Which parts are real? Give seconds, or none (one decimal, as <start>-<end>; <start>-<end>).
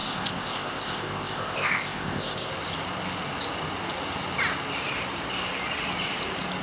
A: 2.5-6.6